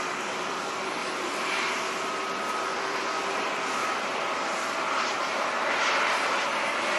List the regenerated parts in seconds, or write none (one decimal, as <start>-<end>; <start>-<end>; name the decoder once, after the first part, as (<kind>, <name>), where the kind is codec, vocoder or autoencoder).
1.0-1.7 (vocoder, BigVGAN v2); 2.7-3.4; 3.8-5.2